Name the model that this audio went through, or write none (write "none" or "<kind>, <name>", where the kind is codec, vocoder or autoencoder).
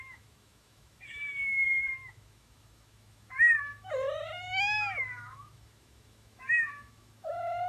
autoencoder, DAC-VAE